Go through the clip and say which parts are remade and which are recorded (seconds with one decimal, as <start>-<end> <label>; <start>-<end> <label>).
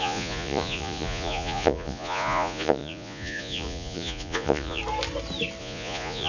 0.0-4.8 remade; 4.8-5.6 recorded; 5.6-6.3 remade